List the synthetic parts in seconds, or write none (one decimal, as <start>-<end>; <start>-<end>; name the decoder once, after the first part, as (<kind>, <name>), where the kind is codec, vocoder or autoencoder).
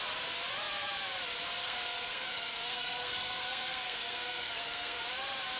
1.6-5.0 (codec, SNAC)